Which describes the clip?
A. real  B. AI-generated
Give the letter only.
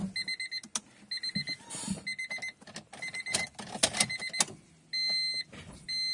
A